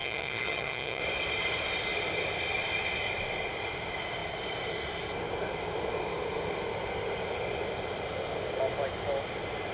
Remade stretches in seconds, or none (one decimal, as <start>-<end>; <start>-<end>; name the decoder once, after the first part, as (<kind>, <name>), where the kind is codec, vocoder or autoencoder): 0.0-1.0 (vocoder, HiFi-GAN)